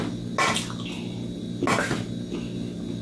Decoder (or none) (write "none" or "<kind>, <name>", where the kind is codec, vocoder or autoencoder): none